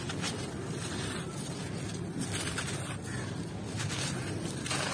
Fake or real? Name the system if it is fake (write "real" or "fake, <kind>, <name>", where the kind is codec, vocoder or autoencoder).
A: real